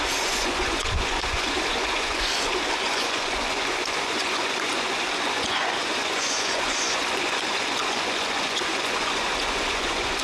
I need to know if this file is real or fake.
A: fake